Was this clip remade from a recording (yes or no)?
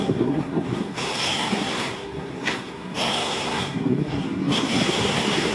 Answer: yes